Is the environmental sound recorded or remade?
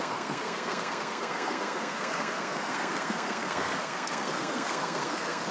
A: remade